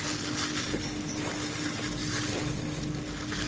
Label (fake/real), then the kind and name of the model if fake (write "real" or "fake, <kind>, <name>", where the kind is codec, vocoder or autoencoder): fake, vocoder, BigVGAN v2